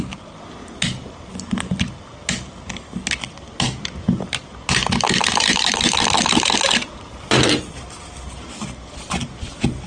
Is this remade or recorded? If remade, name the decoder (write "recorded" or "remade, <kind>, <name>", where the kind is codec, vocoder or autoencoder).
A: recorded